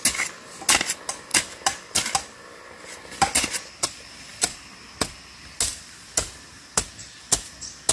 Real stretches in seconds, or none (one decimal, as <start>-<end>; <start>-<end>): 0.0-7.9